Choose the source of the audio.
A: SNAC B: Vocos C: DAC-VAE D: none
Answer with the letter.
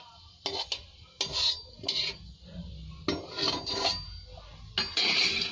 D